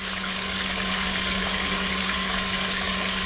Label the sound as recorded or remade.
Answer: remade